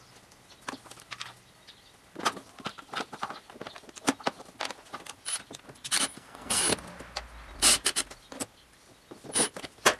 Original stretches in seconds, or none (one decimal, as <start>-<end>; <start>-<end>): 0.0-6.1; 6.6-10.0